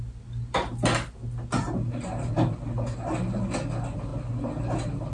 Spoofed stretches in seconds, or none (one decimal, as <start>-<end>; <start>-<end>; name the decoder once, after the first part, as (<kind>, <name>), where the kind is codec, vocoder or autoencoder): none